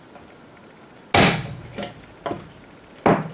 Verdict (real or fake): real